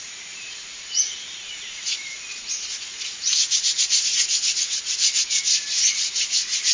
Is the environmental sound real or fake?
fake